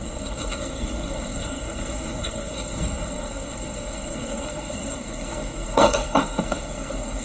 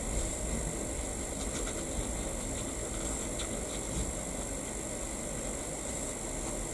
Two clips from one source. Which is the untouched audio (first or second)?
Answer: second